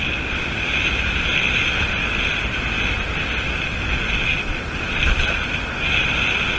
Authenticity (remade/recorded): recorded